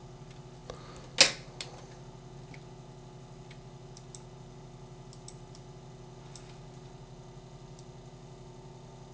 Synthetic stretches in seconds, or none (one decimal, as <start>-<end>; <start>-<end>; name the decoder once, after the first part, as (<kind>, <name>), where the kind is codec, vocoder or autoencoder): none